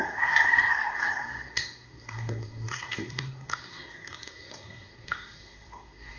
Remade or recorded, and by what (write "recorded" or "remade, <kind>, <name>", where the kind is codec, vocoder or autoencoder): remade, codec, SNAC